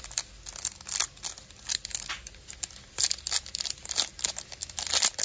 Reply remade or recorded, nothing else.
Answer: recorded